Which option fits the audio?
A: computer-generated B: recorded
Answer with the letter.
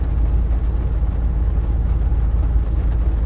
B